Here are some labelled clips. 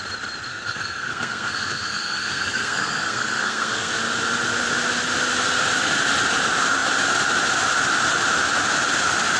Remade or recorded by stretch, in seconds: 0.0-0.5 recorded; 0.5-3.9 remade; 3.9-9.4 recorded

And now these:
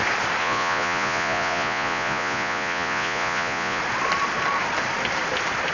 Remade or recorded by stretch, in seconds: 0.0-0.4 recorded; 0.4-3.8 remade; 3.8-5.7 recorded